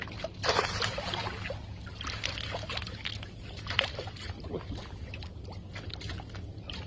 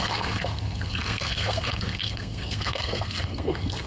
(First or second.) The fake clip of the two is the second